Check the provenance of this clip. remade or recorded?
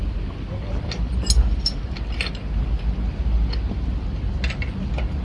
recorded